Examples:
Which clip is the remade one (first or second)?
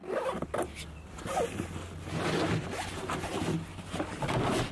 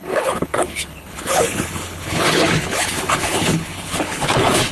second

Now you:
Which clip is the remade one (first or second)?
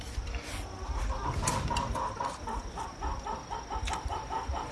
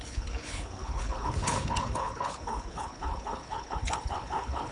second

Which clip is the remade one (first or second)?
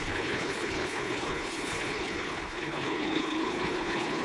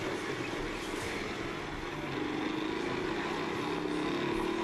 first